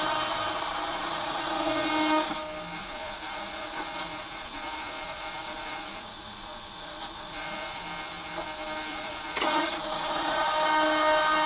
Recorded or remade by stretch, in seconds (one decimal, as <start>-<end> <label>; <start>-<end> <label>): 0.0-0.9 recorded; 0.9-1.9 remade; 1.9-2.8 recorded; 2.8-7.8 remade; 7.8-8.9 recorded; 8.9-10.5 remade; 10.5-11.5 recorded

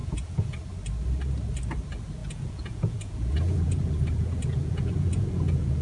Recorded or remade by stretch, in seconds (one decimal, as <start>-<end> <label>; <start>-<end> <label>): 0.0-0.6 remade; 0.6-2.2 recorded; 2.2-5.8 remade

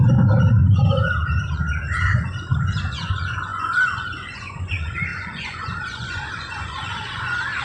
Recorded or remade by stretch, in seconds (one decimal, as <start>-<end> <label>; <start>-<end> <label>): 0.0-7.6 remade

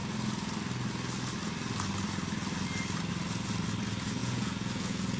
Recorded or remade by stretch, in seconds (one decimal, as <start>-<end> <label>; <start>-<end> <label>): 0.0-4.2 recorded; 4.2-5.2 remade

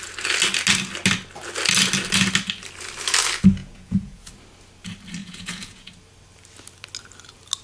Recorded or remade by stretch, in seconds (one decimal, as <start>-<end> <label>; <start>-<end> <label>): 0.0-3.6 recorded; 3.6-4.3 remade; 4.3-5.2 recorded; 5.2-5.9 remade; 5.9-7.6 recorded

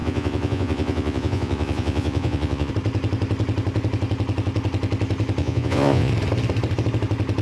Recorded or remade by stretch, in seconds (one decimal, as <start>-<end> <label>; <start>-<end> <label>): 0.0-2.7 remade; 2.7-5.4 recorded; 5.4-6.1 remade; 6.1-7.4 recorded